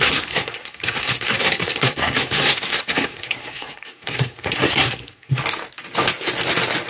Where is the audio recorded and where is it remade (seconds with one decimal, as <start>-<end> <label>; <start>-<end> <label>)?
0.0-5.4 remade; 5.4-6.9 recorded